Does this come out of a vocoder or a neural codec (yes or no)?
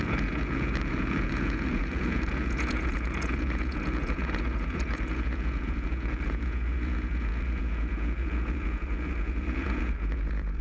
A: yes